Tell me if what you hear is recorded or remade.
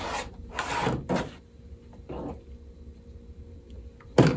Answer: recorded